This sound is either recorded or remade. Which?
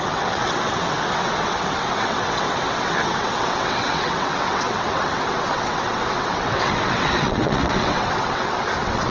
remade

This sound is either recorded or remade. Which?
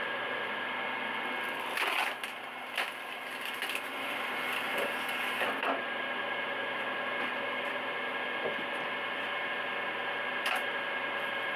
recorded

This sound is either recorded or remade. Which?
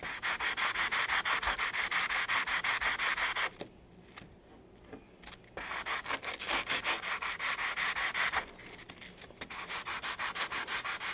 recorded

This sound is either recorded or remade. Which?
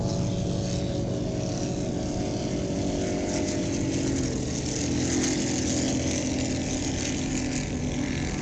recorded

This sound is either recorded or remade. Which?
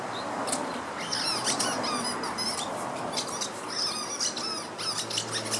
recorded